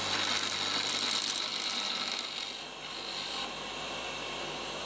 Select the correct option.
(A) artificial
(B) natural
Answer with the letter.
B